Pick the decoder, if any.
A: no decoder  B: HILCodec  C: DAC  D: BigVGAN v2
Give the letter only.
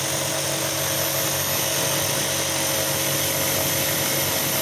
A